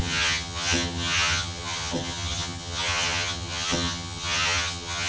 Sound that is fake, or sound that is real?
fake